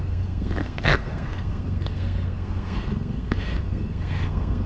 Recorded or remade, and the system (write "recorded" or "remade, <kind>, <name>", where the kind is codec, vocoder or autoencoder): remade, codec, SNAC